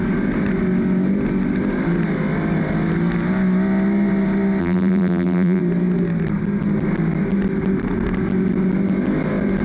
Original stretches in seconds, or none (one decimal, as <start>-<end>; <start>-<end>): 0.0-4.6; 5.6-9.6